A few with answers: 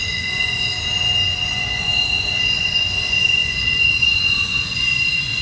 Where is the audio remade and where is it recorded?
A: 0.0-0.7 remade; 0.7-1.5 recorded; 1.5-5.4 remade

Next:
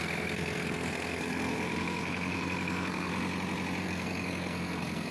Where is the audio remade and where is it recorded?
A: 0.0-3.1 remade; 3.1-3.8 recorded; 3.8-5.1 remade

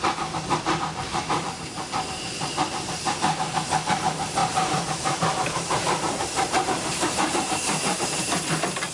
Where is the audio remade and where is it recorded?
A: 0.0-4.4 recorded; 4.4-8.3 remade; 8.3-8.9 recorded

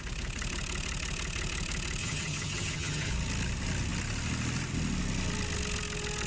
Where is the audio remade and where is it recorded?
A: 0.0-2.0 recorded; 2.0-3.1 remade; 3.1-6.3 recorded

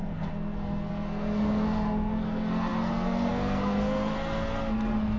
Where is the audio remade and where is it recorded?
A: 0.0-5.2 remade

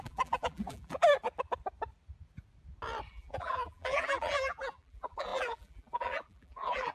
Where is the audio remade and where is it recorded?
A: 0.0-1.1 remade; 1.1-3.1 recorded; 3.1-6.9 remade

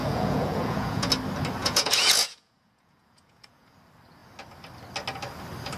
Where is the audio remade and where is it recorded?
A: 0.0-1.1 remade; 1.1-1.6 recorded; 1.6-3.8 remade; 3.8-5.8 recorded